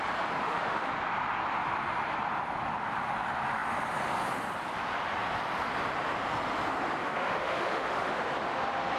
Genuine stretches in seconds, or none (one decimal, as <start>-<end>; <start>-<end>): 0.0-0.4; 0.9-7.0; 8.1-9.0